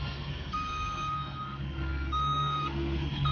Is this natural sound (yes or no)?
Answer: no